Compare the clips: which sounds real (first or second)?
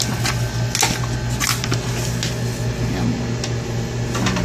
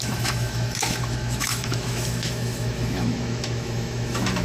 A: first